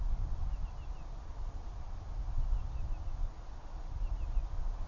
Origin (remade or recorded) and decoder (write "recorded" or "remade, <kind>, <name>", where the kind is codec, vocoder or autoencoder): recorded